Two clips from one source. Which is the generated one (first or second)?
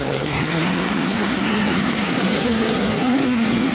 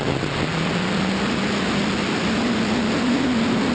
first